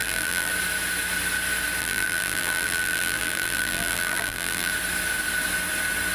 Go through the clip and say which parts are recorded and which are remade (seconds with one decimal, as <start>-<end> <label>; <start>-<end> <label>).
0.0-0.5 remade; 0.5-1.8 recorded; 1.8-4.7 remade; 4.7-6.1 recorded